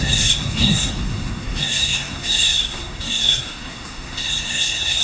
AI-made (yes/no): yes